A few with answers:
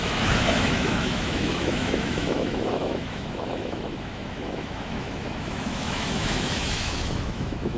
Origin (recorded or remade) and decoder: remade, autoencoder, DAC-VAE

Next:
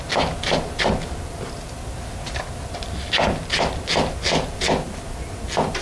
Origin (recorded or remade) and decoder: recorded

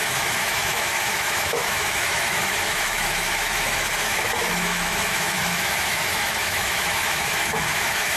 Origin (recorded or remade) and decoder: remade, autoencoder, DAC-VAE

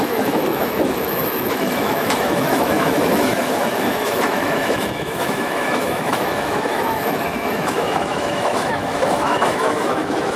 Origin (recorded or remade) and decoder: remade, autoencoder, DAC-VAE